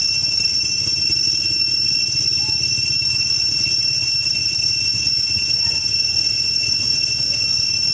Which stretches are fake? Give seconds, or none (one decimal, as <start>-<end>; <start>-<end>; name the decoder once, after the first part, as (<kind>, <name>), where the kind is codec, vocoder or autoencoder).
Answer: 4.4-7.4 (vocoder, Vocos)